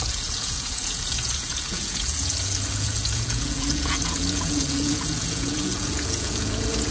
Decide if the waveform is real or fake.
fake